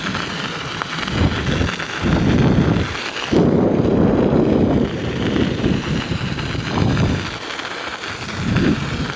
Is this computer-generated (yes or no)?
no